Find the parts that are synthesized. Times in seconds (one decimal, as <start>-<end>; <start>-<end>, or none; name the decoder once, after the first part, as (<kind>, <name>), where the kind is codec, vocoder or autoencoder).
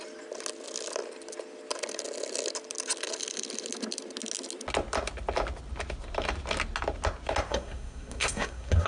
7.5-8.9 (codec, SNAC)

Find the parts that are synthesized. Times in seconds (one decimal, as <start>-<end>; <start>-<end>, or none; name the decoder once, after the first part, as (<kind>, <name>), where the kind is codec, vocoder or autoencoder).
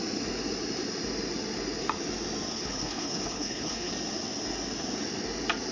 2.5-3.9 (codec, HILCodec)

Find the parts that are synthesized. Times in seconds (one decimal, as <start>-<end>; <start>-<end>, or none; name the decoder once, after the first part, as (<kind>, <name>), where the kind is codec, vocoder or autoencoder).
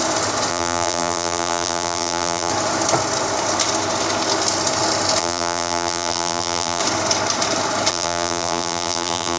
0.5-2.5 (vocoder, BigVGAN v2); 5.2-6.8; 7.9-9.4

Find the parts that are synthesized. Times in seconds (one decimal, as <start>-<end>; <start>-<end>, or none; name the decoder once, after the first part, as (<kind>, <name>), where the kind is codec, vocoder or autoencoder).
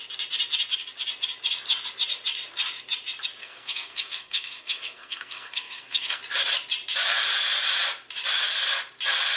3.4-6.2 (codec, SNAC)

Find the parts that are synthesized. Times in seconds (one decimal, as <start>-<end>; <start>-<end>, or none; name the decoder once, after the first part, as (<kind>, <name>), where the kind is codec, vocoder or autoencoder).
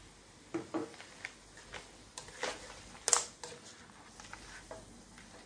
none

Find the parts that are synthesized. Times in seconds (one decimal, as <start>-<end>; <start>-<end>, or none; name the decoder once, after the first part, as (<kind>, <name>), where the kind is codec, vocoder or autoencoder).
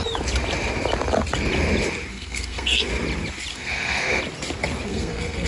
2.1-2.9 (codec, SNAC); 3.5-4.2; 4.9-5.5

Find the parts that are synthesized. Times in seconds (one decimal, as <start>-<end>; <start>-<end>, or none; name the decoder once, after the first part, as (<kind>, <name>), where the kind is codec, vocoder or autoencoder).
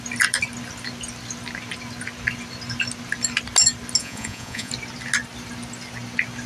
4.0-4.7 (vocoder, Vocos)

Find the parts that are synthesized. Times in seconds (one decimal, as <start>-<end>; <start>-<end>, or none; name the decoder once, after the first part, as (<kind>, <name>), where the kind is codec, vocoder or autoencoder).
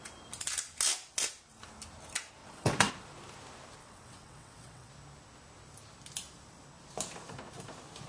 2.4-2.9 (vocoder, WaveNeXt); 3.8-4.9